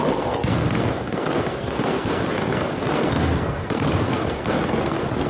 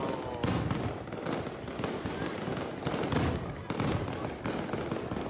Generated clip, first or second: first